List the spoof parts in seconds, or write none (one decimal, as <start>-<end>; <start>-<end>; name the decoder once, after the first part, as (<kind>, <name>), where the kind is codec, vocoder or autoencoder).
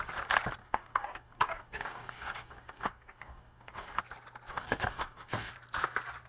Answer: 0.6-4.0 (codec, DAC); 4.5-5.5